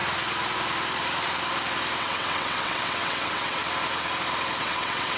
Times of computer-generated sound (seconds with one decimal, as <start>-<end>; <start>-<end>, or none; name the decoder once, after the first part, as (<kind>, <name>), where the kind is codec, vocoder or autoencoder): 2.0-3.6 (vocoder, WaveNeXt); 4.6-5.2